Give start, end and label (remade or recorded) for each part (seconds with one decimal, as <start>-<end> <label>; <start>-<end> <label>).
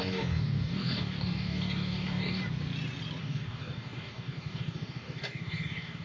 0.0-2.4 remade; 2.4-3.2 recorded; 3.2-6.0 remade